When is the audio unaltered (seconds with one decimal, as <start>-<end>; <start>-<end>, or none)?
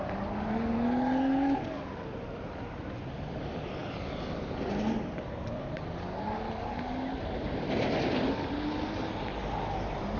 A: 0.0-10.2